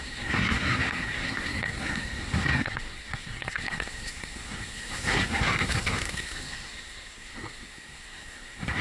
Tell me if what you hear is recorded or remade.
remade